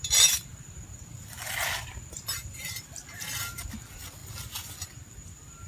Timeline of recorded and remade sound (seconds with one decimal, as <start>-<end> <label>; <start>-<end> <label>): 0.0-0.5 recorded; 0.5-2.8 remade; 2.8-5.7 recorded